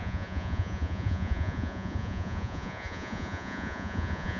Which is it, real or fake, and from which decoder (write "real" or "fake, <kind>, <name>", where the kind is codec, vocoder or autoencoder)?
fake, vocoder, Vocos